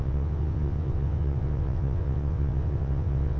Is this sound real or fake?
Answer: fake